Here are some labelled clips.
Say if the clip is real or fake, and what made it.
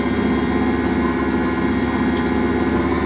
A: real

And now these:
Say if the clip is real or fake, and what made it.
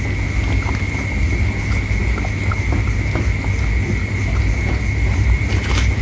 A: real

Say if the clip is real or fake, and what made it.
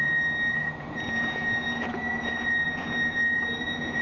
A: fake, vocoder, Vocos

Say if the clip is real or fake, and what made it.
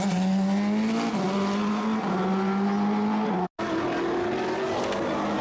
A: real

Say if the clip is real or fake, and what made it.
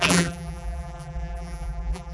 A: fake, vocoder, BigVGAN v2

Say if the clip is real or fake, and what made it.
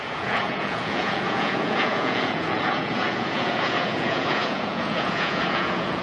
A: fake, vocoder, Vocos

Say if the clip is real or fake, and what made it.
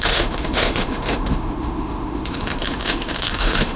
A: fake, autoencoder, DAC-VAE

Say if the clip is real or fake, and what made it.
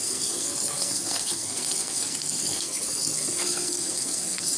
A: fake, codec, SNAC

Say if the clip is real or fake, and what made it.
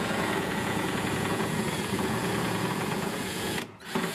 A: fake, vocoder, Vocos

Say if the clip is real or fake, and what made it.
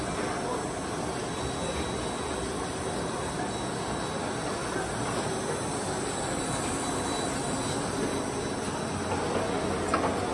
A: real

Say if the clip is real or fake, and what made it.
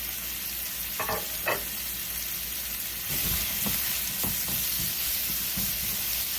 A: real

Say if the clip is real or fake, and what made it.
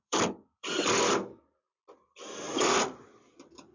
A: fake, vocoder, BigVGAN v2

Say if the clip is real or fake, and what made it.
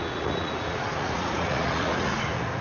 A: fake, vocoder, Vocos